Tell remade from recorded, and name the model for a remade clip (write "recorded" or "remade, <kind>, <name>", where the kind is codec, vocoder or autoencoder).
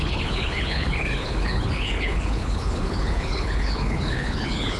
remade, codec, HILCodec